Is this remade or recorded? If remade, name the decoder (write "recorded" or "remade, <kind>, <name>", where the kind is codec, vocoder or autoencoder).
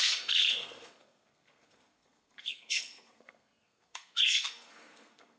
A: remade, codec, SNAC